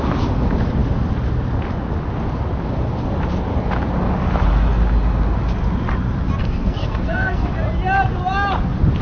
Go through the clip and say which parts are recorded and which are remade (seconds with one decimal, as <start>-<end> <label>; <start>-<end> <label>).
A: 0.0-6.4 recorded; 6.4-7.5 remade; 7.5-9.0 recorded

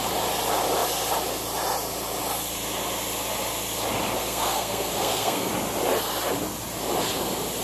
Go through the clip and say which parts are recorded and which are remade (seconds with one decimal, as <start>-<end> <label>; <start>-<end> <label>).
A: 0.0-4.2 recorded; 4.2-5.5 remade; 5.5-7.6 recorded

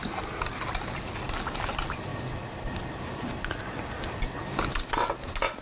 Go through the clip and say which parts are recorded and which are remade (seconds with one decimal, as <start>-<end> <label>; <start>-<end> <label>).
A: 0.0-5.6 recorded

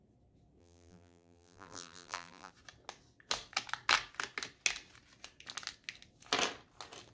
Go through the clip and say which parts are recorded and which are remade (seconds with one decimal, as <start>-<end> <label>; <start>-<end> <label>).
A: 0.0-0.6 recorded; 0.6-2.5 remade; 2.5-7.1 recorded

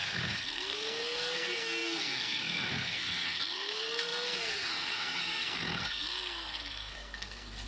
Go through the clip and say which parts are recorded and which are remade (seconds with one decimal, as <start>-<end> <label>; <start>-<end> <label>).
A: 0.0-7.7 remade

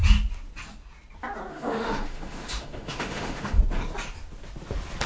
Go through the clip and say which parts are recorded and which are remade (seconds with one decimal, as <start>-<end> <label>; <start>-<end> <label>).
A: 0.0-1.5 recorded; 1.5-3.6 remade; 3.6-5.1 recorded

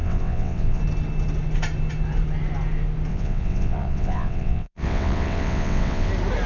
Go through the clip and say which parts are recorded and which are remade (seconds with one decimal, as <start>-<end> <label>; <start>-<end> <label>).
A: 0.0-0.8 remade; 0.8-3.1 recorded; 3.1-6.1 remade; 6.1-6.5 recorded

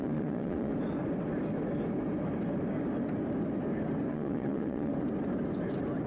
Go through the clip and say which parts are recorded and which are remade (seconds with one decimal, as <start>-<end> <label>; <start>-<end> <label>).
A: 0.0-0.7 remade; 0.7-4.1 recorded; 4.1-4.9 remade; 4.9-6.1 recorded